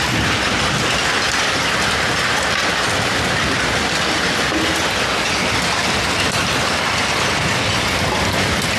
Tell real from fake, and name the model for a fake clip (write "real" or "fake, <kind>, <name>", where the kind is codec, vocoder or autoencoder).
real